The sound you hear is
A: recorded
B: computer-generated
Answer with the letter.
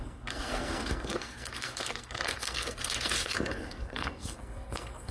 B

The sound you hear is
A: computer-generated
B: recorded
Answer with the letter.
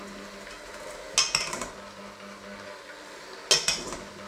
B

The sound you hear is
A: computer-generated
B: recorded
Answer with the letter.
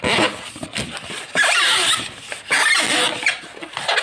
B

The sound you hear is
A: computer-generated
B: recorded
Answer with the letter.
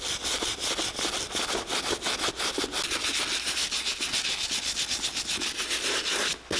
B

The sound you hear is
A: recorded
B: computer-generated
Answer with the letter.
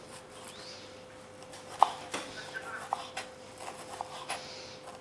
A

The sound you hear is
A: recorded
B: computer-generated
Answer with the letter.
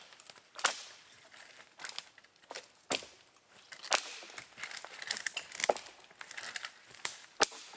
A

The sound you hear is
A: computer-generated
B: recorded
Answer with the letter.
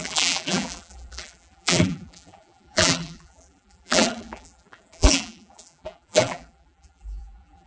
A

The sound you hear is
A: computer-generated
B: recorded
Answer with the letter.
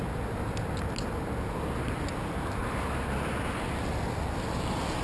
B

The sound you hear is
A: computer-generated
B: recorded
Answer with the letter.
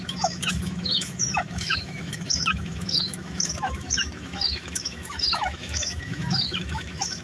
A